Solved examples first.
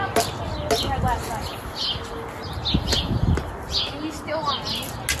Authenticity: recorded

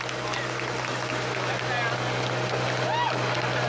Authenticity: recorded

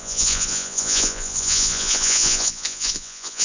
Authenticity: remade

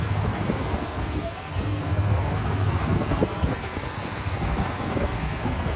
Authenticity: remade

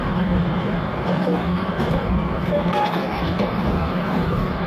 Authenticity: remade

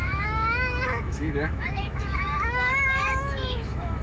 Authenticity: remade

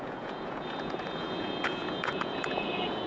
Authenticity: remade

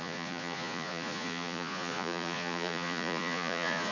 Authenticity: remade